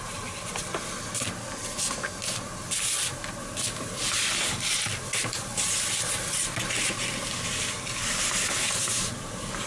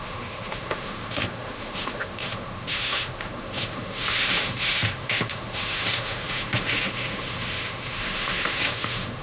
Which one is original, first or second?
first